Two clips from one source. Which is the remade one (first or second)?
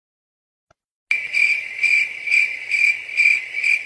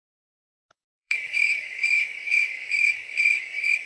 second